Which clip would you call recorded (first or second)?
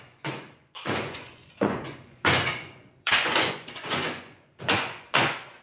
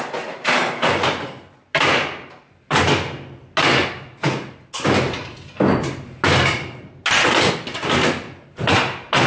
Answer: second